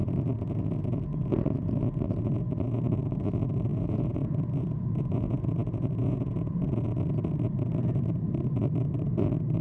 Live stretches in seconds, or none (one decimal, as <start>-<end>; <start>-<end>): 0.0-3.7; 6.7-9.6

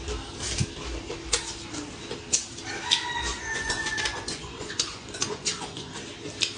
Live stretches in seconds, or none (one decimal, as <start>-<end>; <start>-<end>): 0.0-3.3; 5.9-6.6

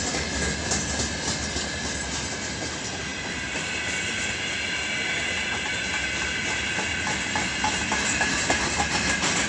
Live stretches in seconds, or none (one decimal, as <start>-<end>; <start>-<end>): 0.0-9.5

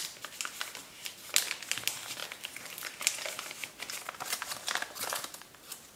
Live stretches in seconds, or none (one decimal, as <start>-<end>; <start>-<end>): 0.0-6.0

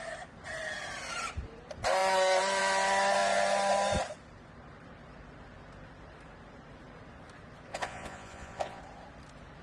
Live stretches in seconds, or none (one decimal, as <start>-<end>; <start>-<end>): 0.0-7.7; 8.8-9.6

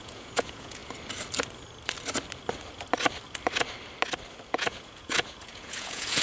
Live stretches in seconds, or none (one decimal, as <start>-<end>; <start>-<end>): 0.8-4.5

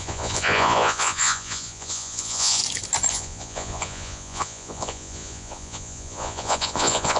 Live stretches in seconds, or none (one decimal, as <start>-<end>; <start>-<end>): 2.6-3.1